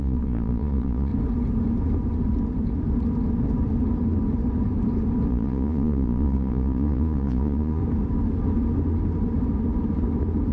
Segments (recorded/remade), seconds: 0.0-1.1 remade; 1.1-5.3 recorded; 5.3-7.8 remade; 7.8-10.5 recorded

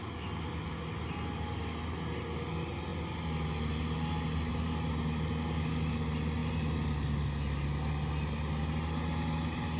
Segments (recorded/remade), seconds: 0.0-9.8 recorded

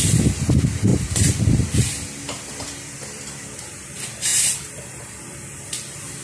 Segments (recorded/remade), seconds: 0.0-0.9 recorded; 0.9-3.6 remade; 3.6-4.3 recorded; 4.3-5.0 remade; 5.0-6.2 recorded

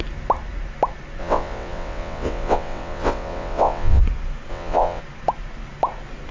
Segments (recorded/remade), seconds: 0.0-1.2 recorded; 1.2-4.0 remade; 4.0-4.5 recorded; 4.5-5.0 remade; 5.0-6.3 recorded

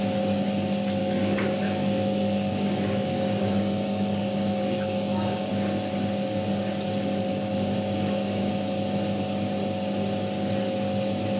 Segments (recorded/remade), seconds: 0.0-1.0 recorded; 1.0-5.5 remade; 5.5-7.3 recorded; 7.3-8.5 remade; 8.5-11.4 recorded

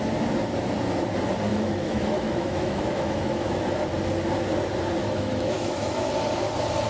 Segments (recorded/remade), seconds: 0.0-1.5 recorded; 1.5-3.6 remade; 3.6-5.0 recorded; 5.0-6.1 remade; 6.1-6.9 recorded

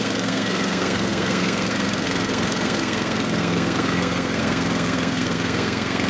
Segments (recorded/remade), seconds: 0.0-6.1 remade

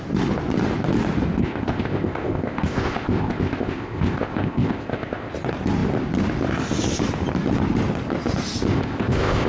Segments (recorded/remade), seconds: 0.0-1.4 recorded; 1.4-5.3 remade; 5.3-8.7 recorded; 8.7-9.5 remade